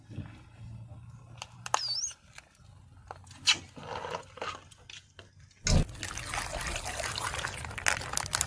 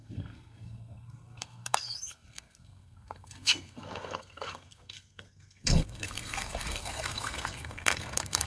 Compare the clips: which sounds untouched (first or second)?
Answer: first